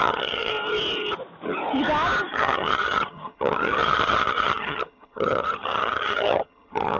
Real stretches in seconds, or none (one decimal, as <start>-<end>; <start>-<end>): 0.5-2.3